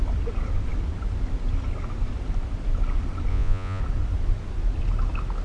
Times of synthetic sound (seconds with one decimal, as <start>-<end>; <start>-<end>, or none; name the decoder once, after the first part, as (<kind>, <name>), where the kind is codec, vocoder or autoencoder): 3.3-3.8 (vocoder, Vocos)